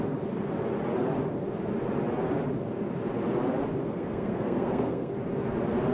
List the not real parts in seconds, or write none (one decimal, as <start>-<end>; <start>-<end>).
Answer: 3.8-5.1